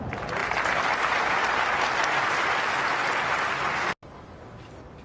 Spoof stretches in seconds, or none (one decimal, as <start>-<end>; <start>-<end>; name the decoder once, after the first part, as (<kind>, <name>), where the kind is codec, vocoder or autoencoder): none